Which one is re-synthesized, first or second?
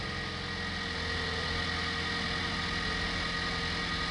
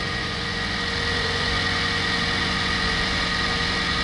second